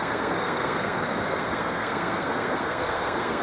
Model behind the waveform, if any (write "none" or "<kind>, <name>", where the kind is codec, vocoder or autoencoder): codec, SNAC